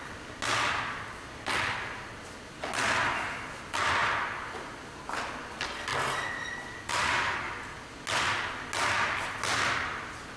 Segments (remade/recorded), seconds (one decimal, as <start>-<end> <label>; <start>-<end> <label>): 0.0-10.4 recorded